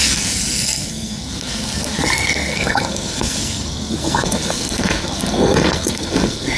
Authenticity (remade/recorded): remade